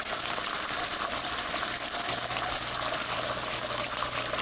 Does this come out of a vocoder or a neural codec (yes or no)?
no